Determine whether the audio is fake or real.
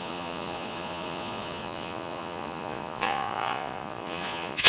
fake